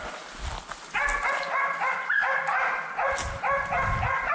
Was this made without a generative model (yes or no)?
yes